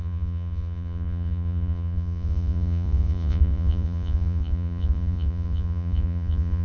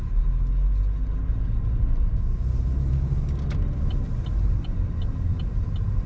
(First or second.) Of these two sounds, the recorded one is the second